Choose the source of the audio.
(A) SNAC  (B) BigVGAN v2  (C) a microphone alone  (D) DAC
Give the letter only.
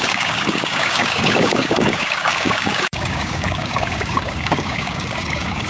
D